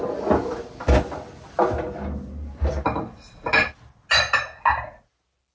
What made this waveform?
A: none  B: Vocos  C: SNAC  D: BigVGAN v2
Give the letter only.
A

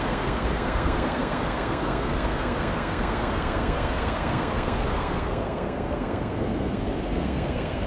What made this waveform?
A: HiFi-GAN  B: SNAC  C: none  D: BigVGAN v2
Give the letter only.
B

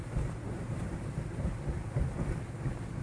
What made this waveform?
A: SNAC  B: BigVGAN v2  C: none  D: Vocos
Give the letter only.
C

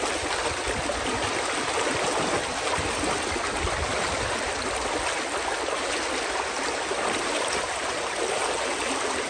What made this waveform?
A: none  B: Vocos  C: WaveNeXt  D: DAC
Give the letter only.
A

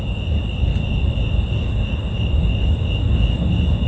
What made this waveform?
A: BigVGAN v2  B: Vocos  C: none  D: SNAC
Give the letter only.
C